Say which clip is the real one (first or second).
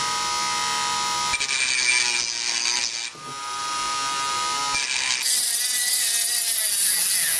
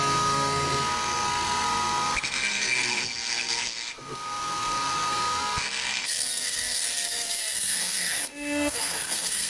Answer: first